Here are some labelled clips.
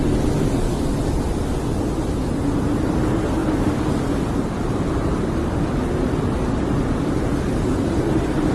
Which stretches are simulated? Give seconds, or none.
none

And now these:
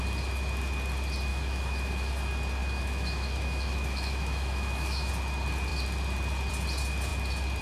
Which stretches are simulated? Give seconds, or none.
1.3-2.1 (autoencoder, DAC-VAE); 2.6-5.1

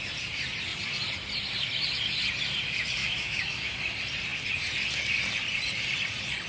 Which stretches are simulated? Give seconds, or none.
3.0-3.8 (autoencoder, DAC-VAE)

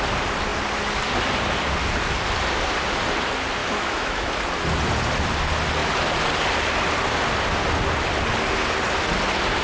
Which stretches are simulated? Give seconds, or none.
3.6-4.3 (autoencoder, DAC-VAE)

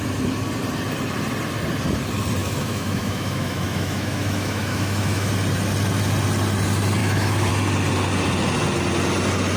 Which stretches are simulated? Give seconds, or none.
2.4-5.3 (autoencoder, DAC-VAE); 7.0-7.5